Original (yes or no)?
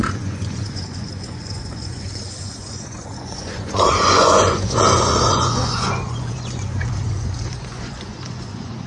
no